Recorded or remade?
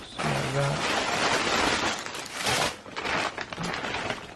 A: recorded